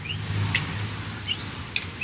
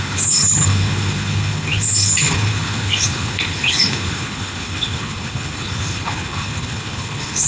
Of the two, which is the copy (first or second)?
second